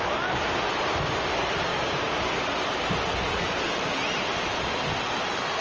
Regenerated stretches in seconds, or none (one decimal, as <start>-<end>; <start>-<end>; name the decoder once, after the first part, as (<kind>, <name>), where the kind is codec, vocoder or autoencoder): 1.7-2.2 (codec, DAC)